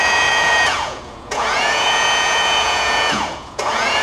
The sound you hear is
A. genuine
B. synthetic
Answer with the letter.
B